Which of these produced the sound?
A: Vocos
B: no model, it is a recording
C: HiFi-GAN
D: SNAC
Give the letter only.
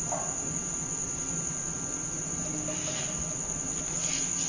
B